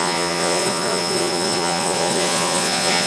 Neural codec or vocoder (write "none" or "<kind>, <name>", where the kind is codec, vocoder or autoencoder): vocoder, Vocos